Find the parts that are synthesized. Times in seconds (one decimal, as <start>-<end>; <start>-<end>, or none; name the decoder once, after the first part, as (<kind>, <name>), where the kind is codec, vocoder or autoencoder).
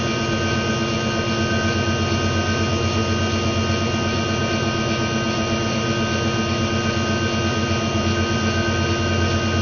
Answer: none